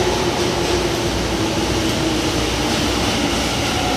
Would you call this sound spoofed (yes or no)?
no